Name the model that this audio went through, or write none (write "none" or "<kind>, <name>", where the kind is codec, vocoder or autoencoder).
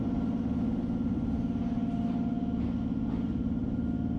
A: none